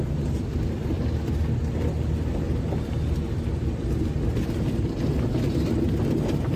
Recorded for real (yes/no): yes